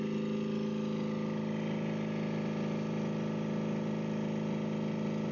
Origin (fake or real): real